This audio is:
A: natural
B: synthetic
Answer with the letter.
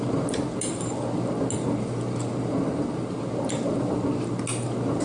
A